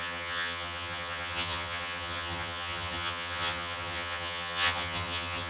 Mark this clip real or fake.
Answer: fake